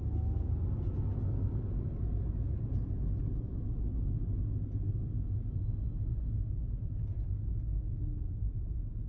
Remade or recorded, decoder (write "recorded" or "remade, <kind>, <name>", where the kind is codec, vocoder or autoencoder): recorded